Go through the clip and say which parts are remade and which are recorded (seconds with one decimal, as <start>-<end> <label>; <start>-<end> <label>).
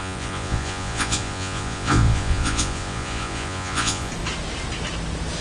0.0-4.1 remade; 4.1-5.4 recorded